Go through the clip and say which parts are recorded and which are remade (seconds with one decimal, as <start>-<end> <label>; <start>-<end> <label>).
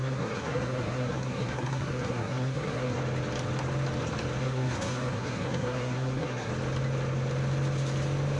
0.0-3.0 remade; 3.0-4.4 recorded; 4.4-6.5 remade; 6.5-8.4 recorded